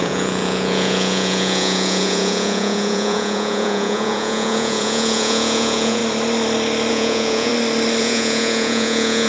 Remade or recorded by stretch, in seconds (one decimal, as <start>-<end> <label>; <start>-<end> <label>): 0.0-6.0 remade; 6.0-6.9 recorded; 6.9-7.5 remade; 7.5-8.0 recorded; 8.0-9.3 remade